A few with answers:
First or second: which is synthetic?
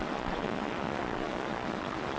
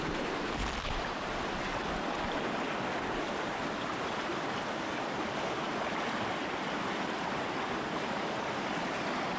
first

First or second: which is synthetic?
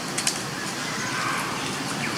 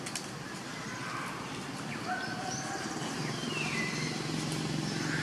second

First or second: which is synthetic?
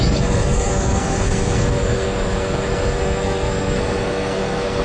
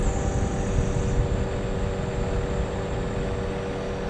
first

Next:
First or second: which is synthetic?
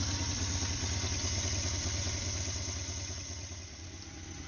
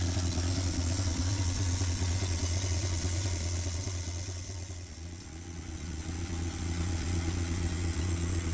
second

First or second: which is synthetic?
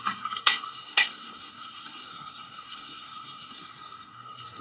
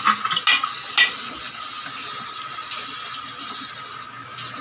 first